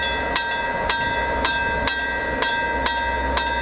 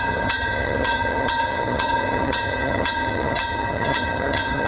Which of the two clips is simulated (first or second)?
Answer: second